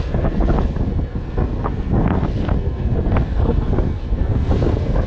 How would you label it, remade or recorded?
remade